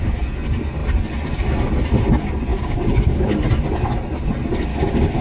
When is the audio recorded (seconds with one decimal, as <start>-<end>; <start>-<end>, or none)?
0.0-2.5; 3.4-4.7